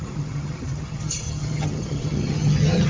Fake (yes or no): yes